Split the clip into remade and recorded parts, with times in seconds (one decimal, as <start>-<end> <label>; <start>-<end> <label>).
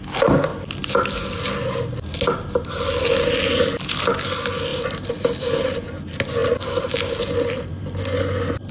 0.0-8.7 recorded